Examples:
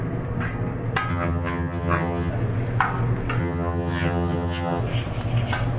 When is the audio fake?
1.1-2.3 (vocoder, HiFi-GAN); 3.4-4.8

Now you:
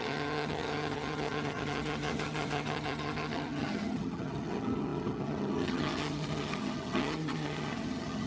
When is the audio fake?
0.0-8.3 (vocoder, HiFi-GAN)

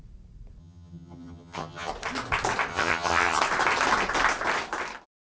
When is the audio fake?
0.6-1.9 (vocoder, HiFi-GAN); 2.7-3.4

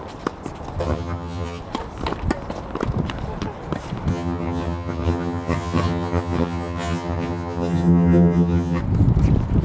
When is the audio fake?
0.8-1.6 (vocoder, HiFi-GAN); 4.1-8.8

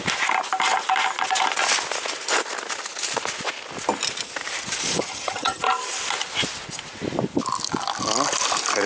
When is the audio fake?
4.9-5.6 (vocoder, HiFi-GAN)